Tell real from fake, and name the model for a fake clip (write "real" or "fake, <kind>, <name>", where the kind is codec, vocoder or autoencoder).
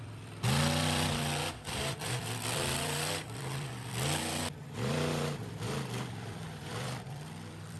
fake, vocoder, BigVGAN v2